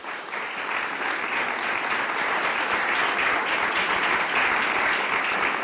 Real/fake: real